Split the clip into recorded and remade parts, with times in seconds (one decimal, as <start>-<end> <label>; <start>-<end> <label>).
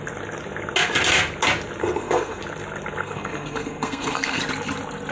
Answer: 0.0-1.8 recorded; 1.8-2.4 remade; 2.4-3.0 recorded; 3.0-4.4 remade; 4.4-5.1 recorded